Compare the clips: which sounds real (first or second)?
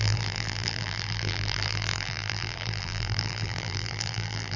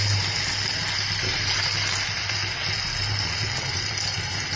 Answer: second